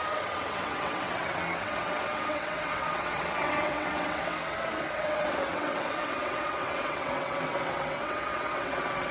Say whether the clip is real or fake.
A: fake